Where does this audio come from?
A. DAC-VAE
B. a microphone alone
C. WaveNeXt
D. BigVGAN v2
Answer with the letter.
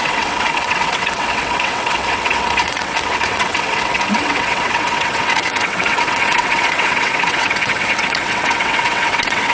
C